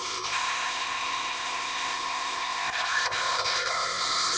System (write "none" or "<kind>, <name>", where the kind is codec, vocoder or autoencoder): codec, ZipCodec